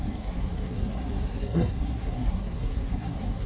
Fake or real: fake